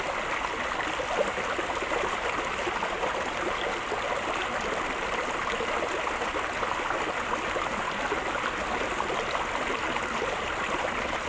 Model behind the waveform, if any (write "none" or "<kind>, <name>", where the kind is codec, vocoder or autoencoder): none